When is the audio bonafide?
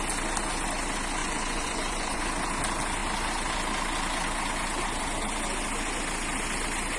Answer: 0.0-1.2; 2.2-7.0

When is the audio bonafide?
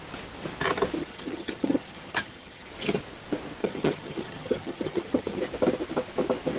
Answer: 0.0-1.0; 2.7-3.6; 5.4-6.6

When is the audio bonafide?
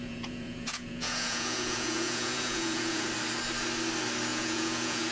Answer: 3.1-4.3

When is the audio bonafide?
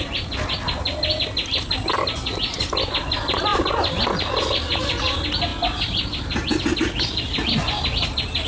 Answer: 0.0-8.5